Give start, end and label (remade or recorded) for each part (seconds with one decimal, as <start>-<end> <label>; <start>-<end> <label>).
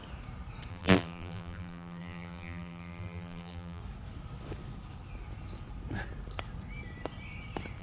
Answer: 0.0-0.7 recorded; 0.7-3.8 remade; 3.8-7.8 recorded